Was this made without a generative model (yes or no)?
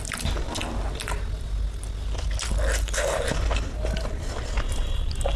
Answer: yes